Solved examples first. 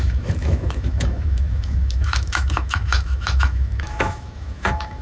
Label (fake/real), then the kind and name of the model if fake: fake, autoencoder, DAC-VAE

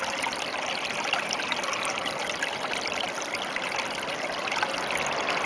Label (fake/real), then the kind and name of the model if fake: real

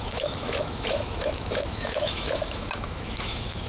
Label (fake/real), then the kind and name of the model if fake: fake, autoencoder, DAC-VAE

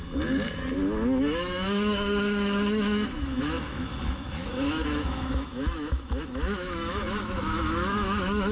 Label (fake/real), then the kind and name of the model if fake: fake, autoencoder, DAC-VAE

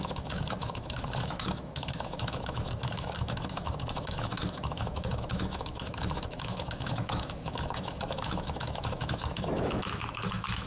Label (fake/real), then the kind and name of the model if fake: fake, autoencoder, DAC-VAE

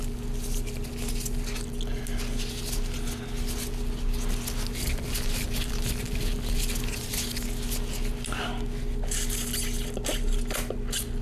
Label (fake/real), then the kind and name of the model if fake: real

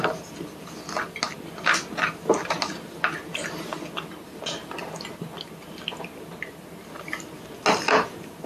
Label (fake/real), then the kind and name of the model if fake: real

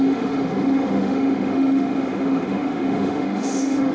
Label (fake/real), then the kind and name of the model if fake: fake, autoencoder, DAC-VAE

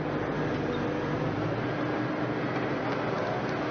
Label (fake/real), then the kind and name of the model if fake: real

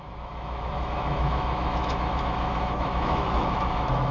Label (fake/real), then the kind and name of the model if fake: fake, autoencoder, DAC-VAE